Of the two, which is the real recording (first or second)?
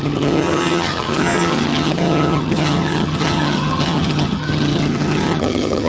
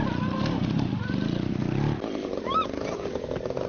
second